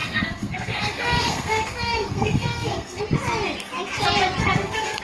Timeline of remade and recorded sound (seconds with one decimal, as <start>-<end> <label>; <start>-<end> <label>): 0.0-3.0 remade; 3.0-4.4 recorded; 4.4-5.0 remade